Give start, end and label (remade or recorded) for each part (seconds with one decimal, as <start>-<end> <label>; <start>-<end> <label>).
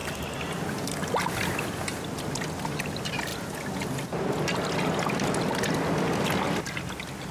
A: 0.0-7.3 recorded